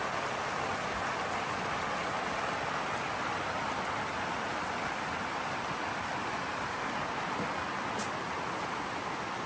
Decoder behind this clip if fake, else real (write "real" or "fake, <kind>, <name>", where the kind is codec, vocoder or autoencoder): real